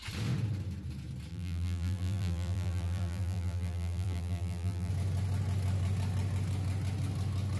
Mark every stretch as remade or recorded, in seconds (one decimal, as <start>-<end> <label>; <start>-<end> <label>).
0.0-1.3 recorded; 1.3-4.9 remade; 4.9-7.6 recorded